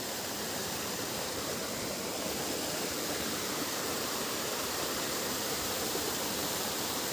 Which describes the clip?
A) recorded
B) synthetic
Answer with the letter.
B